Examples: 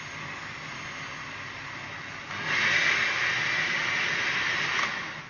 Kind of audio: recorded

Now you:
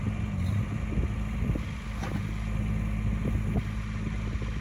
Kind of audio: recorded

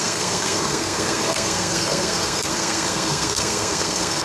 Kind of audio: remade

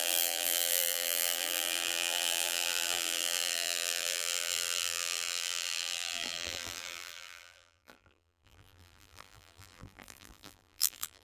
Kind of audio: remade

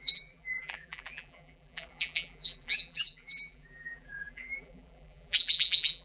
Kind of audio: remade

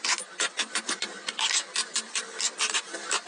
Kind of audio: recorded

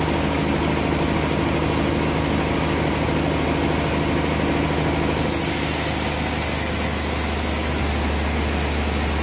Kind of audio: recorded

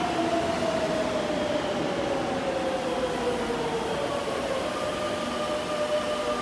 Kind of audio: recorded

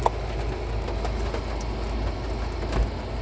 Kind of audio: recorded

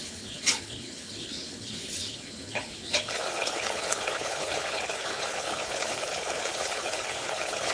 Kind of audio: remade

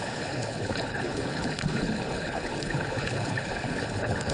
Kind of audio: remade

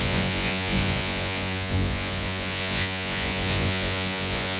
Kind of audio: remade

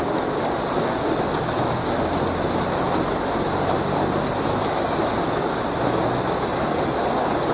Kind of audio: recorded